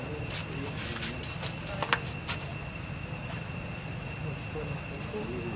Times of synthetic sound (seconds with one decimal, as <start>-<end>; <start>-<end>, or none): none